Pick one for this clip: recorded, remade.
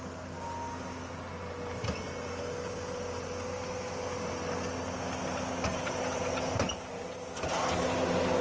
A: recorded